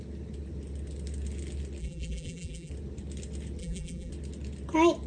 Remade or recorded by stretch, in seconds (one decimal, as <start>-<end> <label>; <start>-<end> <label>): 0.0-1.8 recorded; 1.8-2.7 remade; 2.7-3.6 recorded; 3.6-4.1 remade; 4.1-5.1 recorded